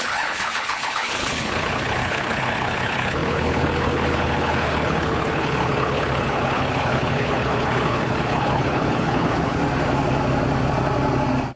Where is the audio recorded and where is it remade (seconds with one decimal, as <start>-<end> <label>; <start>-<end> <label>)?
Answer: 0.0-9.6 remade; 9.6-11.6 recorded